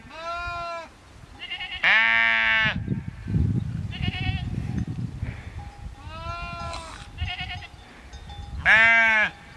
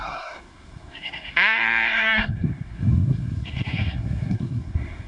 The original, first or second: first